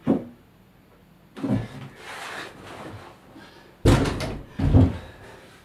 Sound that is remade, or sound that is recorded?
recorded